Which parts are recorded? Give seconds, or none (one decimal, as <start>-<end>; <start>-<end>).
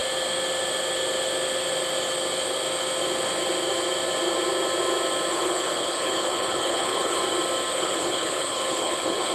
0.0-5.3; 7.2-7.7